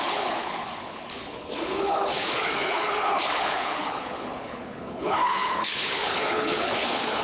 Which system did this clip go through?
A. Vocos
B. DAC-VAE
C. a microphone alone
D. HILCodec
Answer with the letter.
D